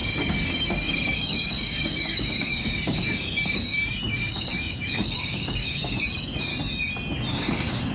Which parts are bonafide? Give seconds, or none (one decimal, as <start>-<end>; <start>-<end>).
6.5-7.3